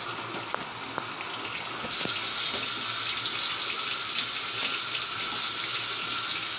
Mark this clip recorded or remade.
recorded